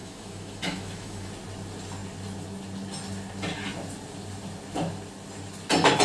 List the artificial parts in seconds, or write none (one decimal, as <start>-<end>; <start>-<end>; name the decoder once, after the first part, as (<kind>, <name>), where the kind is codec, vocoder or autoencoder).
0.0-1.3 (autoencoder, DAC-VAE)